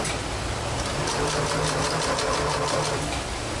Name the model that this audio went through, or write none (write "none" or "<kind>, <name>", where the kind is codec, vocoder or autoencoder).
none